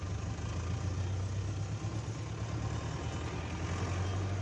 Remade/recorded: recorded